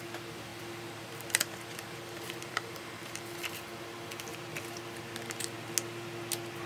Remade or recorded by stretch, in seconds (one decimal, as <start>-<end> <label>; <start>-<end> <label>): 0.0-0.5 recorded; 0.5-3.2 remade; 3.2-6.7 recorded